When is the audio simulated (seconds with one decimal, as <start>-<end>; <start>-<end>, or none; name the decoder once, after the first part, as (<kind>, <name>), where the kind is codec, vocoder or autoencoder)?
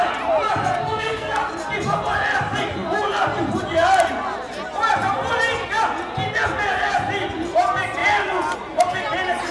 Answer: 0.8-1.5 (codec, SNAC)